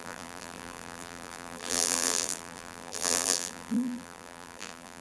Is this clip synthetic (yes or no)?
yes